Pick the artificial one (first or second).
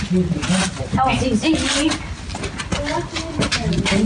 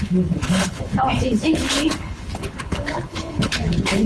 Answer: second